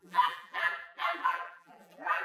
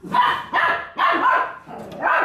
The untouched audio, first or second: second